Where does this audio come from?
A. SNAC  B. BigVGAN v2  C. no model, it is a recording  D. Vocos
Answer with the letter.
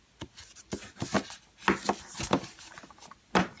C